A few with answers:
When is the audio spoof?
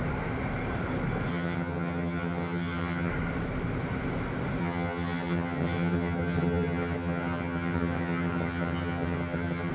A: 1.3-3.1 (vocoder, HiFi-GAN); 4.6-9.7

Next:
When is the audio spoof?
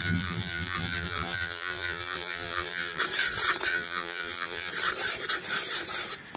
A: 0.0-3.0 (vocoder, BigVGAN v2); 3.7-4.7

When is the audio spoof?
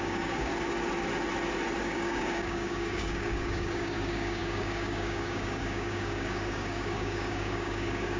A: 0.0-0.5 (codec, DAC); 1.8-8.2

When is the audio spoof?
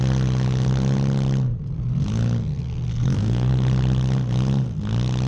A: 2.9-3.5 (codec, SNAC)